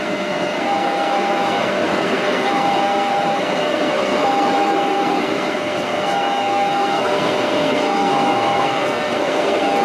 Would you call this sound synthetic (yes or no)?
yes